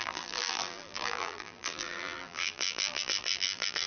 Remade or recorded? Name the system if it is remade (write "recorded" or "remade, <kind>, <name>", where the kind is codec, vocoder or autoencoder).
remade, vocoder, BigVGAN v2